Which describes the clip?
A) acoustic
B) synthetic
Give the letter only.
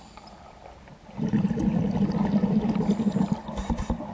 A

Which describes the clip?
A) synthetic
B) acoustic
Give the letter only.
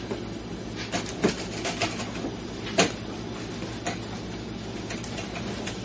B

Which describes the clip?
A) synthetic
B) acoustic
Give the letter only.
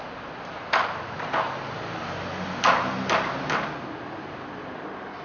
B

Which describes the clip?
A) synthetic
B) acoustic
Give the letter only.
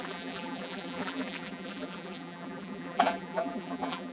A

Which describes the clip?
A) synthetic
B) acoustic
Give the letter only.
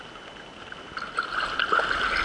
B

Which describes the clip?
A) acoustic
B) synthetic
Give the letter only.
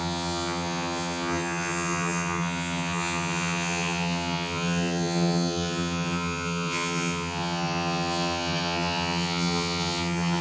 B